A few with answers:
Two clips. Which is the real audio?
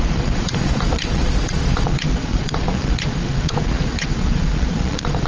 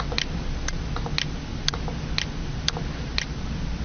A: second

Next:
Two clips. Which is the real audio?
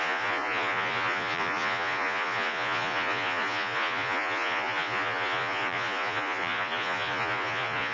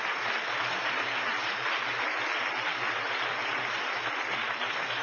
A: second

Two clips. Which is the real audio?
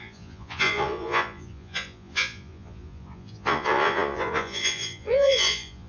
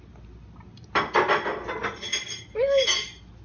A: second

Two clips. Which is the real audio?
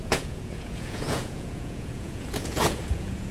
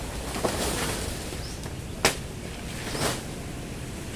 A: second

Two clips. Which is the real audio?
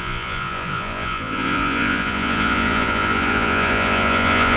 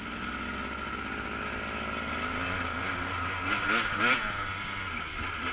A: second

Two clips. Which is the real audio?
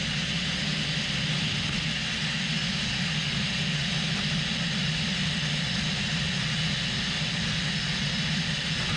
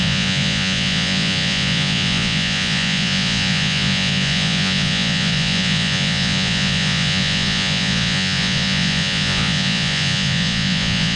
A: first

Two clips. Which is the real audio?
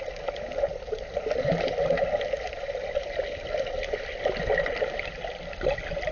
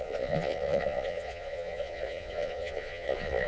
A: first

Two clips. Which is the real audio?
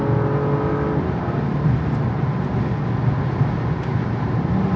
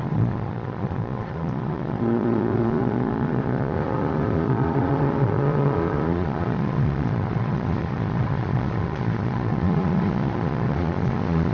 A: first